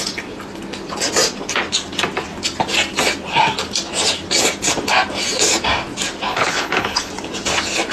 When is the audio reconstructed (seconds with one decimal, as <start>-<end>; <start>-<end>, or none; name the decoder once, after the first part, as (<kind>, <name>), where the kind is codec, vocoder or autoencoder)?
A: 6.3-7.1 (codec, HILCodec)